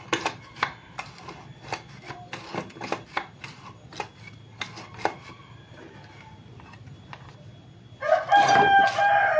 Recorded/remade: recorded